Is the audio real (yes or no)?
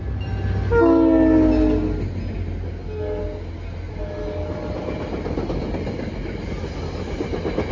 yes